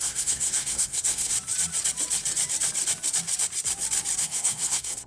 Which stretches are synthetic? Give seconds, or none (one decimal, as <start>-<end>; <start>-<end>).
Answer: 0.0-1.3; 4.2-5.1